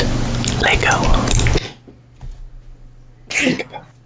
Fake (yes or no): no